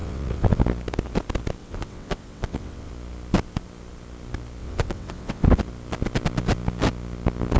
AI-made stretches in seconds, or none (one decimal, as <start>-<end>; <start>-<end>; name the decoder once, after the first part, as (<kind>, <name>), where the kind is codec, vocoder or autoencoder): 0.0-0.6 (vocoder, WaveNeXt); 1.6-2.9; 4.6-5.6